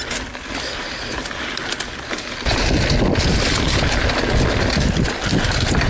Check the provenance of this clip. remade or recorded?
recorded